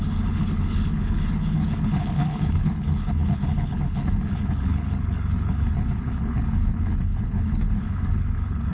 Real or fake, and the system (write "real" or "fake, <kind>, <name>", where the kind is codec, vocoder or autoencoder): fake, codec, HILCodec